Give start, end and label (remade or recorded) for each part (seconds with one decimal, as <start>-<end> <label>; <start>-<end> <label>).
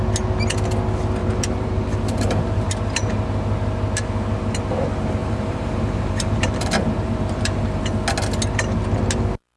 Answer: 0.0-1.2 recorded; 1.2-2.7 remade; 2.7-5.2 recorded; 5.2-7.8 remade; 7.8-9.6 recorded